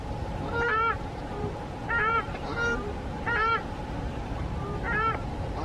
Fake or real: fake